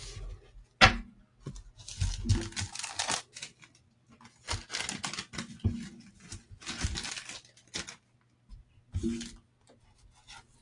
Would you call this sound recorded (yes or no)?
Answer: yes